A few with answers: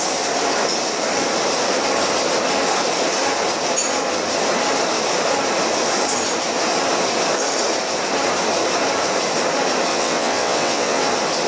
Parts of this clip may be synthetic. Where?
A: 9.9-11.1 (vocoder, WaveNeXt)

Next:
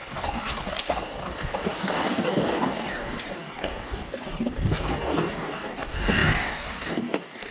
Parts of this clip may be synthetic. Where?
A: 0.0-7.5 (codec, DAC)